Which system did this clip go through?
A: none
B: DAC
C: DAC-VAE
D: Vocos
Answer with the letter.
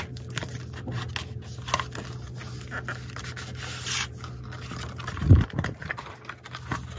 A